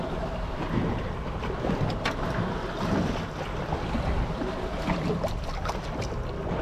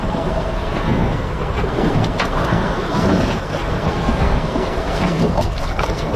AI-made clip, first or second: second